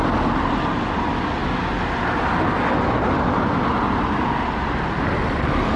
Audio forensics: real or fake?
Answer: real